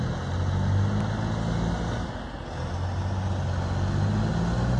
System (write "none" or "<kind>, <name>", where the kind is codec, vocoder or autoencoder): none